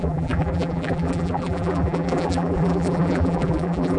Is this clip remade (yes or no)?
yes